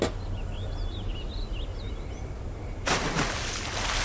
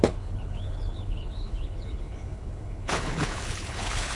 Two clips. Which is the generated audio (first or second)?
second